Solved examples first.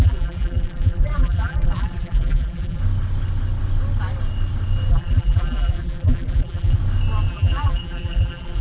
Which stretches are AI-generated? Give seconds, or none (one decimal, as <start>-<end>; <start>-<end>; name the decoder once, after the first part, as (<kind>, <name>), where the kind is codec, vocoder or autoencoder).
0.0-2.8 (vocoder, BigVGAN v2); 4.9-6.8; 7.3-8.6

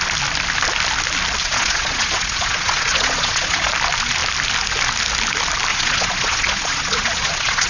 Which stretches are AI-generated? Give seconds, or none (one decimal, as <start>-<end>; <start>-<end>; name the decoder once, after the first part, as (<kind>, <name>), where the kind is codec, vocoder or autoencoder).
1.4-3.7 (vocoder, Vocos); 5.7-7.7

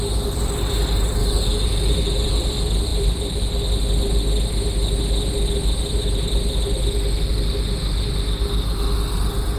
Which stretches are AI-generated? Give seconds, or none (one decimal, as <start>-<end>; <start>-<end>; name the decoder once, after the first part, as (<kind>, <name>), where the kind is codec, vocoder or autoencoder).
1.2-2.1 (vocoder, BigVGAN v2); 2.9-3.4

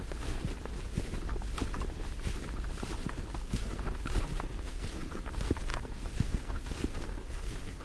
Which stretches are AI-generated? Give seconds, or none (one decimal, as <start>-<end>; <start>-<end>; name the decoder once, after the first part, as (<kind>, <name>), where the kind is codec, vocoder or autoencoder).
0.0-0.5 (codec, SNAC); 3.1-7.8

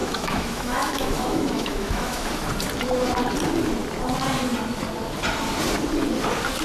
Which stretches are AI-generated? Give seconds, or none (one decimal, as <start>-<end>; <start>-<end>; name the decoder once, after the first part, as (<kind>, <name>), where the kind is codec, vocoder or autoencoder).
0.0-2.3 (autoencoder, DAC-VAE)

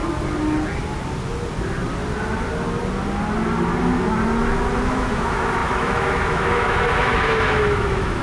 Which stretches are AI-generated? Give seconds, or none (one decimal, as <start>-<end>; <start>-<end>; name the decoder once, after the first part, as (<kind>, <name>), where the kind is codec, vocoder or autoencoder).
4.9-8.2 (autoencoder, DAC-VAE)

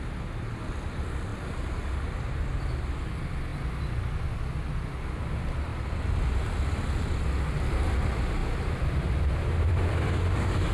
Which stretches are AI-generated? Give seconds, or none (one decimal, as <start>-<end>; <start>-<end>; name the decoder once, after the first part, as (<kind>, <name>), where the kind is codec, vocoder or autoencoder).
8.4-10.7 (vocoder, BigVGAN v2)